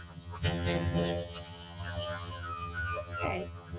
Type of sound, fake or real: fake